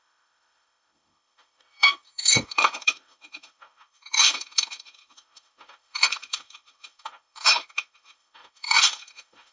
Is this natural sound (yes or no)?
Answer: no